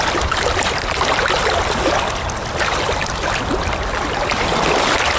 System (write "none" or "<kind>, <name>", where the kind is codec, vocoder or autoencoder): none